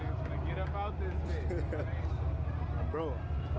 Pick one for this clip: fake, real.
real